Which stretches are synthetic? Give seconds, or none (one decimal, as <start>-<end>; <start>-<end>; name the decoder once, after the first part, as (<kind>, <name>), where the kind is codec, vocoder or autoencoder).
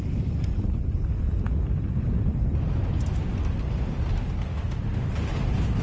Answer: 4.5-5.1 (autoencoder, DAC-VAE)